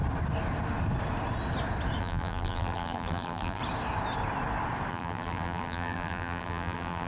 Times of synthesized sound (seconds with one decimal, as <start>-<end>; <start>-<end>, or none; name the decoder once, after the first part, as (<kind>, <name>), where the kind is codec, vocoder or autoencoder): 2.0-3.6 (vocoder, BigVGAN v2); 4.9-7.1